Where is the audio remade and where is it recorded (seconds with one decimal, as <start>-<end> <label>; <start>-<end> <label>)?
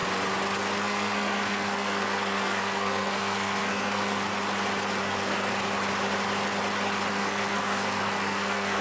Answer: 0.0-0.8 recorded; 0.8-4.3 remade; 4.3-5.0 recorded; 5.0-5.5 remade; 5.5-7.1 recorded; 7.1-8.8 remade